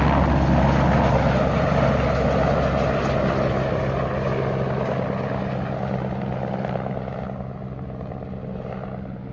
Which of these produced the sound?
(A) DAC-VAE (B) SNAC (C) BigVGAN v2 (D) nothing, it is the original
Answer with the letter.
D